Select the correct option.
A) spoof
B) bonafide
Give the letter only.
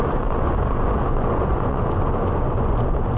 A